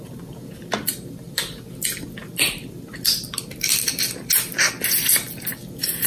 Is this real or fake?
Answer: real